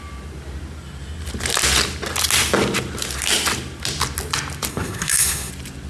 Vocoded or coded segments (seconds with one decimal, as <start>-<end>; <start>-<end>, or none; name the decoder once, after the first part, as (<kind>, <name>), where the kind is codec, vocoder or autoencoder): 4.7-5.5 (codec, SNAC)